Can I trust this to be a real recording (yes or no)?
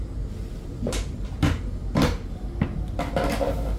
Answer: yes